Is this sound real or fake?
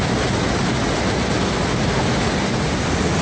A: real